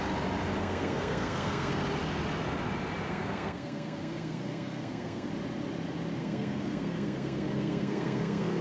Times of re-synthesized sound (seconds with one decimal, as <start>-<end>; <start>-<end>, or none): 0.6-1.8; 3.1-5.3; 6.2-8.6